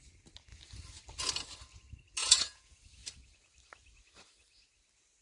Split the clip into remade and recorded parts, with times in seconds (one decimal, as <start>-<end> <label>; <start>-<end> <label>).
0.0-2.2 recorded; 2.2-2.8 remade; 2.8-5.2 recorded